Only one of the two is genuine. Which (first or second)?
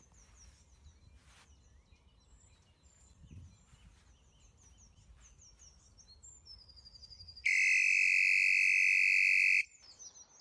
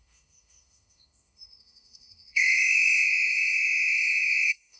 first